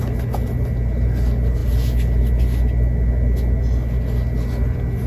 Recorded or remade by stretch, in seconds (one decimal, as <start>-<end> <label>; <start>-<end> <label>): 0.0-5.1 recorded